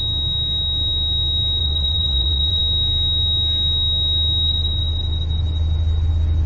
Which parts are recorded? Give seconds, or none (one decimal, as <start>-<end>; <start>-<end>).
0.0-1.6; 2.6-6.5